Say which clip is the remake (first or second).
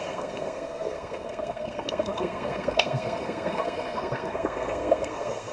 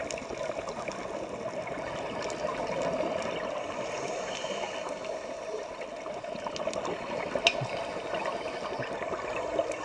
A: first